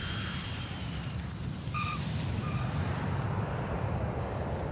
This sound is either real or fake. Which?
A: fake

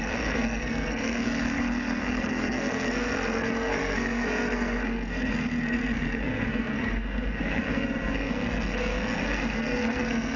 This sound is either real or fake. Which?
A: fake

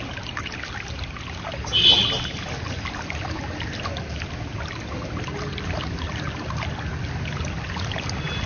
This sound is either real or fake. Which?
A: real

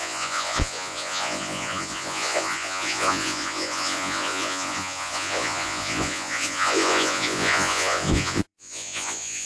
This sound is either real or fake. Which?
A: fake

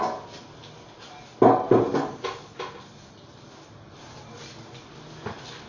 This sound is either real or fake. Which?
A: real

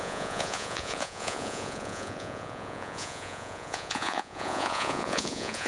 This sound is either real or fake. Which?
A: fake